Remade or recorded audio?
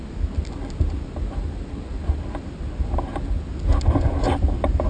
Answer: recorded